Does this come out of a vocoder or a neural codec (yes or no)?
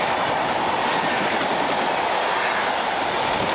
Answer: no